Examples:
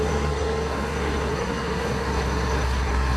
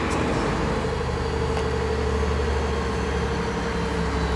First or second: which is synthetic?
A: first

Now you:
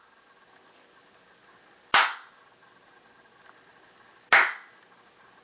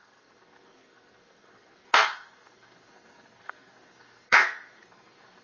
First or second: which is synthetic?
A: second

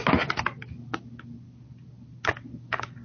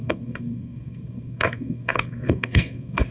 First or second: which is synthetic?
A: second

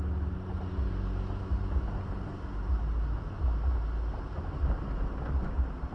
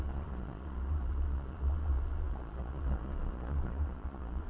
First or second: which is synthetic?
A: second